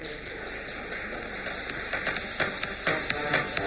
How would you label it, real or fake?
real